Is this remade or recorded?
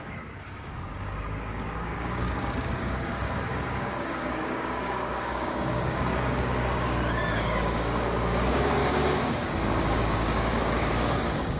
remade